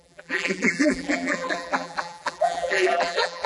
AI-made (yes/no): yes